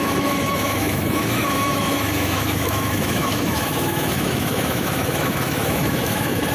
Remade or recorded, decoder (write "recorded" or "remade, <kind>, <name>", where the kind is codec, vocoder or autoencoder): remade, autoencoder, DAC-VAE